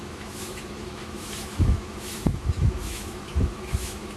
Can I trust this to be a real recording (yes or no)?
no